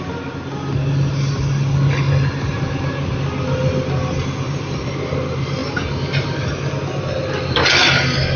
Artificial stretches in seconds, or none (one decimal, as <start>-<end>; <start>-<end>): none